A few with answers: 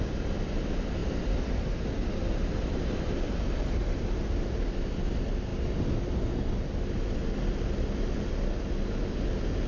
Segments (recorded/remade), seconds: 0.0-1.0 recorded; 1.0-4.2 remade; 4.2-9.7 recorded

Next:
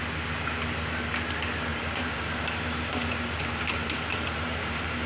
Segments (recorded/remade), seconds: 0.0-1.7 recorded; 1.7-5.1 remade

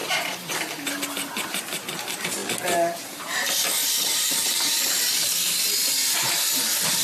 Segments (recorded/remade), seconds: 0.0-1.0 remade; 1.0-7.0 recorded